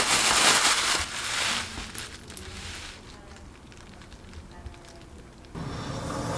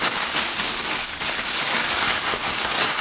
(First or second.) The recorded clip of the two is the first